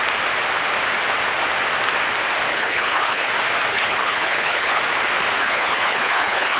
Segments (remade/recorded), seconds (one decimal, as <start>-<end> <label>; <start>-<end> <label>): 0.0-2.5 recorded; 2.5-3.3 remade; 3.3-3.7 recorded; 3.7-4.8 remade; 4.8-5.4 recorded; 5.4-6.6 remade